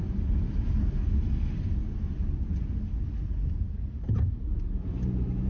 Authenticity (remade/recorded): recorded